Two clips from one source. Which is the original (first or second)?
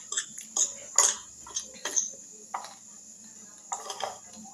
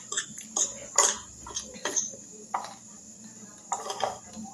first